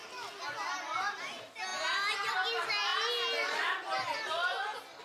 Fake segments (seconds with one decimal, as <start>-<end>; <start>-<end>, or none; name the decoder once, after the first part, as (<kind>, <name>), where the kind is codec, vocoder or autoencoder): none